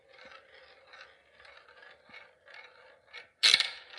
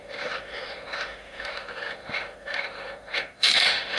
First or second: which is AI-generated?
second